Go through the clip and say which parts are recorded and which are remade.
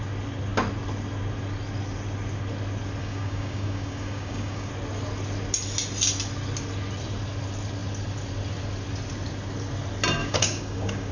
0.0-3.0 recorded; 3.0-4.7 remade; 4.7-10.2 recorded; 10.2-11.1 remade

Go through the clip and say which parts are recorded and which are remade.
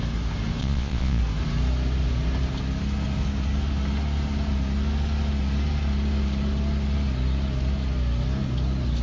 0.0-0.6 recorded; 0.6-1.2 remade; 1.2-9.0 recorded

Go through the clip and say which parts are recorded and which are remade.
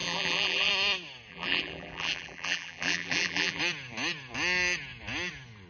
0.0-0.7 remade; 0.7-1.3 recorded; 1.3-3.6 remade; 3.6-5.7 recorded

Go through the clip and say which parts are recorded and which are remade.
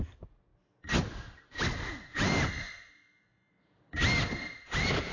0.0-5.1 recorded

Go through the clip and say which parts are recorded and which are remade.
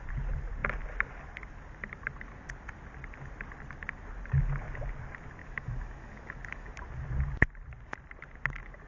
0.0-5.4 recorded; 5.4-6.7 remade; 6.7-8.9 recorded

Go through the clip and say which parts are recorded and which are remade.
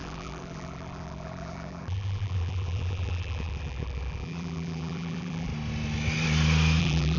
0.0-5.5 remade; 5.5-6.8 recorded; 6.8-7.2 remade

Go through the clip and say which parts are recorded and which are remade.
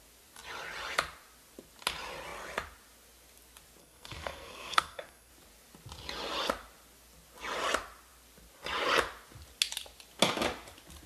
0.0-3.8 recorded; 3.8-5.3 remade; 5.3-11.1 recorded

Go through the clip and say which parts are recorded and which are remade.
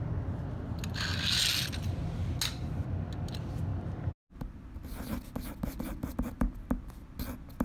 0.0-7.6 recorded